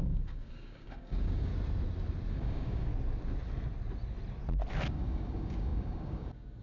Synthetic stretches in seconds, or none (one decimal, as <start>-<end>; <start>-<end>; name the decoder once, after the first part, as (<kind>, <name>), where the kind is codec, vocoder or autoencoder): 0.0-1.5 (codec, DAC); 2.3-2.9; 4.9-6.6